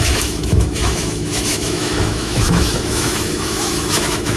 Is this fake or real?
fake